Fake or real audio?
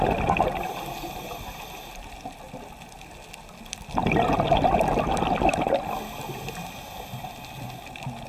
real